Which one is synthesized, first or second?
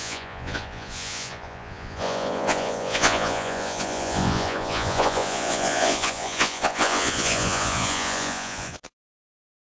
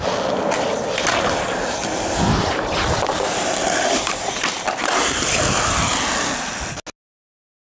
first